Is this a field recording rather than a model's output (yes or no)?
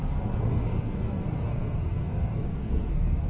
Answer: no